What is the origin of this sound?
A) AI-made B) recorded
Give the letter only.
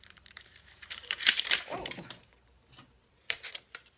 A